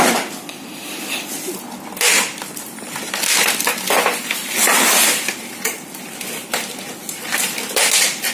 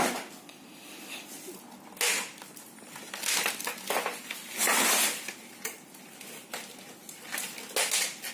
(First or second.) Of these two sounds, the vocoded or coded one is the first